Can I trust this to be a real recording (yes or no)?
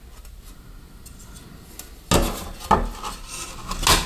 yes